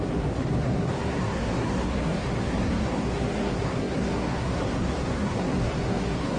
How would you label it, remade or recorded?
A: remade